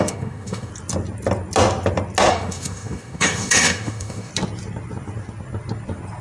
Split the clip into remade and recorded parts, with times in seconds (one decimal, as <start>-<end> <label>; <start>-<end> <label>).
0.0-0.7 remade; 0.7-2.3 recorded; 2.3-4.3 remade; 4.3-6.2 recorded